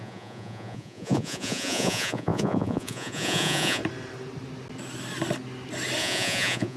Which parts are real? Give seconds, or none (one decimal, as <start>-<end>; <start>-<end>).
3.8-6.0